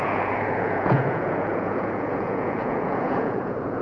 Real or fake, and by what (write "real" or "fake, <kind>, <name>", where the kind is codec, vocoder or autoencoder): fake, vocoder, Vocos